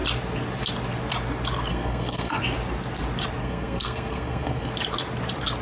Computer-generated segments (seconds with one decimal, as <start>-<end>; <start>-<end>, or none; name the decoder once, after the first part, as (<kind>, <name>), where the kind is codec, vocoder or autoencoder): 1.7-2.4 (codec, SNAC); 3.4-4.7